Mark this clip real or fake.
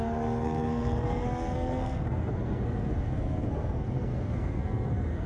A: fake